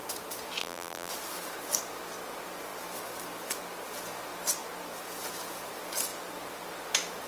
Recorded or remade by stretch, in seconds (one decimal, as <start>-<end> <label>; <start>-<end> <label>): 0.0-0.6 recorded; 0.6-1.1 remade; 1.1-7.3 recorded